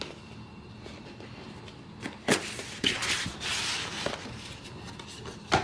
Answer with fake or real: real